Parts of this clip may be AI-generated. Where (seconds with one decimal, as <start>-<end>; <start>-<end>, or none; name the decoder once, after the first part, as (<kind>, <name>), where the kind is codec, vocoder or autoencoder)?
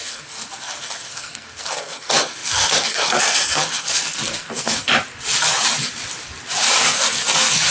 0.0-4.9 (codec, SNAC); 6.8-7.7